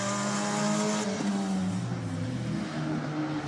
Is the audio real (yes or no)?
yes